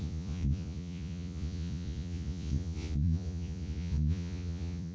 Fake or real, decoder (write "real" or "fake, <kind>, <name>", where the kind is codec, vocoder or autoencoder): fake, vocoder, Vocos